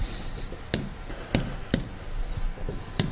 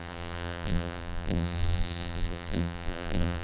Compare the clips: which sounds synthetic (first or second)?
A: second